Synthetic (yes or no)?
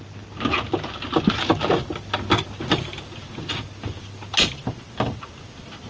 no